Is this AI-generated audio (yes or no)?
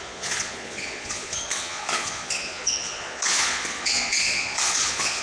yes